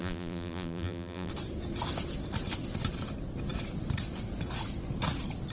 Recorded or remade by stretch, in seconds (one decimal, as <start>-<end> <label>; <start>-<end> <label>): 0.0-1.3 remade; 1.3-5.5 recorded